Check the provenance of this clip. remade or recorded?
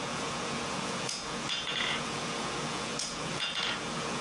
remade